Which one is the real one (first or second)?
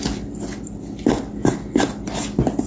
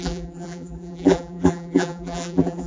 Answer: first